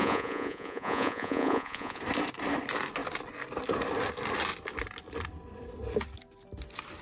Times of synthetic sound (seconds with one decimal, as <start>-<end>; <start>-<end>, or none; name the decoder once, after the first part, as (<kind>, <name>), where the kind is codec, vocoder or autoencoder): 0.0-2.0 (vocoder, Vocos)